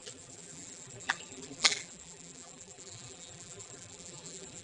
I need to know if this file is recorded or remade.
remade